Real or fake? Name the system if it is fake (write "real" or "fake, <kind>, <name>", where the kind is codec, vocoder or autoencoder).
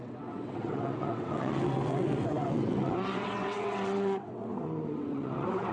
fake, vocoder, WaveNeXt